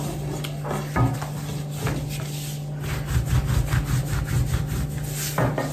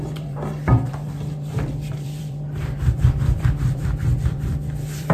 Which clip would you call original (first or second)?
first